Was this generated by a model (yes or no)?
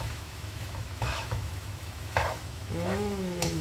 yes